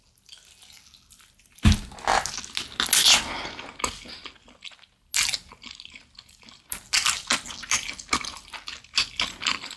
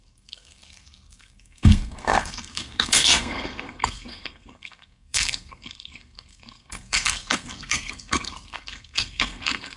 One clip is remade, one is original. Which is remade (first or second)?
second